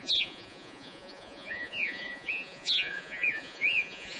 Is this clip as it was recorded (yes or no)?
no